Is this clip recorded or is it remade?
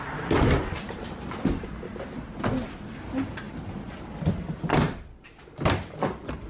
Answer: recorded